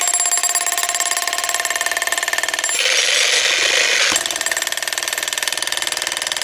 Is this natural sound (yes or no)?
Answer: yes